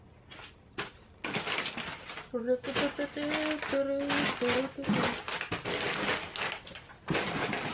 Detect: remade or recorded recorded